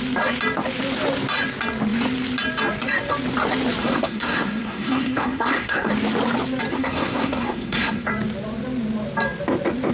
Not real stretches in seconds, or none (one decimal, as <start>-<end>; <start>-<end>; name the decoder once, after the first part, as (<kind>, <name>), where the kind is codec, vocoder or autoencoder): 3.8-5.9 (codec, SNAC); 6.7-8.1